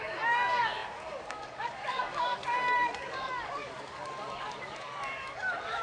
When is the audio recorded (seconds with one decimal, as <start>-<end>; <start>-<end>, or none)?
none